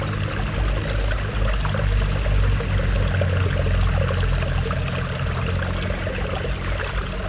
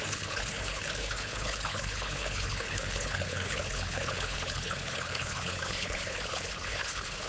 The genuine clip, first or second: first